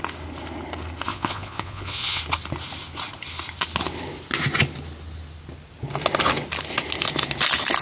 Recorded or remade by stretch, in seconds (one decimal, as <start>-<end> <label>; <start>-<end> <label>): 0.0-1.1 recorded; 1.1-2.2 remade; 2.2-7.8 recorded